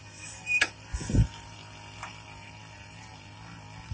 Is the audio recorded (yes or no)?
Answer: yes